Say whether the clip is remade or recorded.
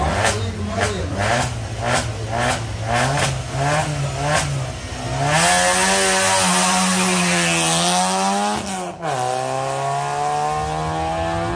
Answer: recorded